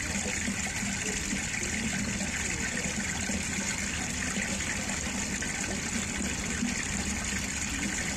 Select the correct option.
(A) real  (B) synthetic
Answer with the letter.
A